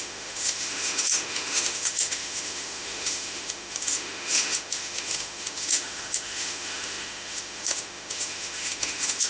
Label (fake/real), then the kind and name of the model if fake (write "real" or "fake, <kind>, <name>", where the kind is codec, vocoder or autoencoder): fake, autoencoder, DAC-VAE